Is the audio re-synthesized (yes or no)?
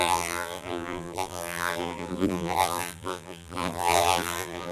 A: yes